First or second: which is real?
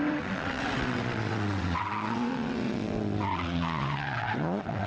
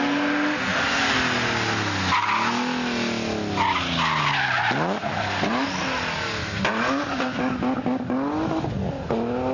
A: second